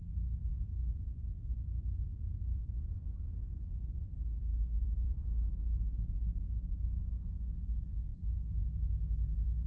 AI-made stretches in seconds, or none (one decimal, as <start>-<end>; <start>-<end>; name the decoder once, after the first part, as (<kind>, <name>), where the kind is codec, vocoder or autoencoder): 0.5-5.2 (vocoder, BigVGAN v2)